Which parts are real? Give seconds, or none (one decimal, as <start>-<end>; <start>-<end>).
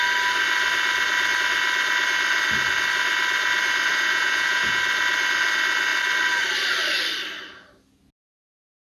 0.0-3.9; 4.8-8.8